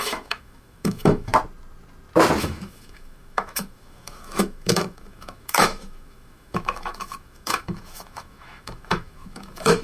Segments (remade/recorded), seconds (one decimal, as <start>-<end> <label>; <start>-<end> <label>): 0.0-1.3 remade; 1.3-2.4 recorded; 2.4-9.8 remade